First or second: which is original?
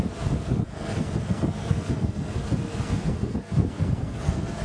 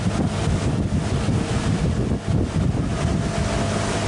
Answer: second